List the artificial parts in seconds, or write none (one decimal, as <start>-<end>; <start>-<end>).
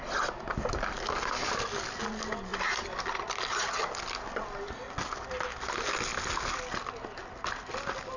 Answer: none